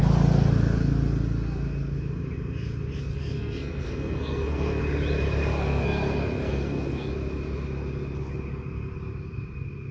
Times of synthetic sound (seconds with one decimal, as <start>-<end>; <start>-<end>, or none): 3.1-4.8; 5.6-7.1

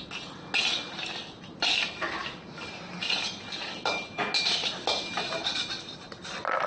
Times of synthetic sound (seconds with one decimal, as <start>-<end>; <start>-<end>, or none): none

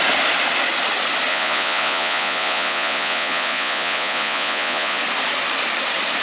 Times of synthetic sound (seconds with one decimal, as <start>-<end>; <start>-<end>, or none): 1.3-5.0

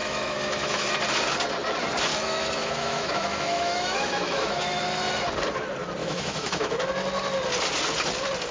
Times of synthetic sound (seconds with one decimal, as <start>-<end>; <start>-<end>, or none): 0.0-0.9; 2.1-4.8; 6.0-6.9

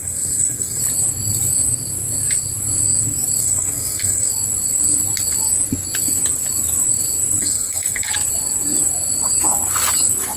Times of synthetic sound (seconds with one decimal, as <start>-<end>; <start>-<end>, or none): 0.0-0.8; 3.4-4.3; 7.4-8.1

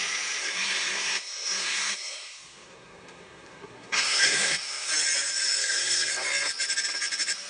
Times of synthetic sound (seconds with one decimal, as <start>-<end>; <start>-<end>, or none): 0.4-4.9; 5.6-6.1

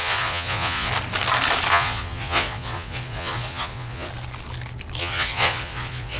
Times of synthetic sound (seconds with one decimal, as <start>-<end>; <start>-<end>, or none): 0.0-0.9; 1.7-4.1; 5.0-6.2